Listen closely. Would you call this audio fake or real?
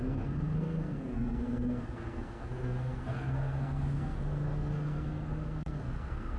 fake